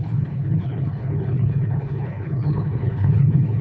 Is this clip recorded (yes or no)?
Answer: no